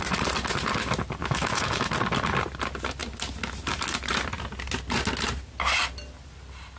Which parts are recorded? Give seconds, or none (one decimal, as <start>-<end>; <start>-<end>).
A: 0.0-1.2; 1.9-6.8